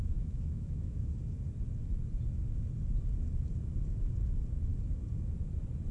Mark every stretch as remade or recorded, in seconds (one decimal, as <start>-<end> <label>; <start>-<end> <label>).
0.0-1.1 remade; 1.1-5.9 recorded